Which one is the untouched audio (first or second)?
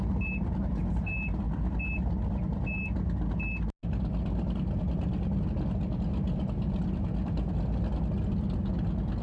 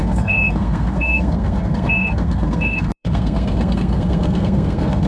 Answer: first